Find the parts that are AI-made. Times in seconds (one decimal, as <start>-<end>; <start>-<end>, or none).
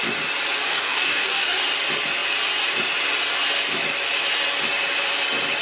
0.7-1.6